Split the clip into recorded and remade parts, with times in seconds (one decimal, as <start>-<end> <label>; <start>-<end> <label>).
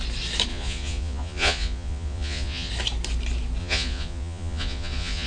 0.0-0.5 recorded; 0.5-2.7 remade; 2.7-3.6 recorded; 3.6-5.3 remade